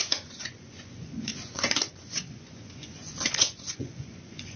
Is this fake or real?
fake